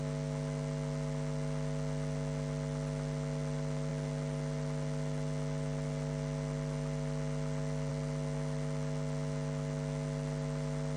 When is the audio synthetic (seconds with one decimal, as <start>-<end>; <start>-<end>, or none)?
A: none